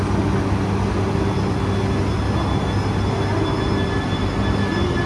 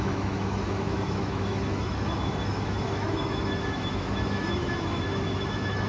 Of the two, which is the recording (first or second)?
first